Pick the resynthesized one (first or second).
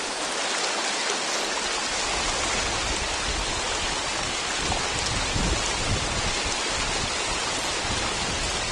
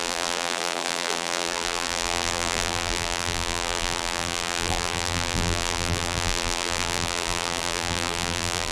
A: second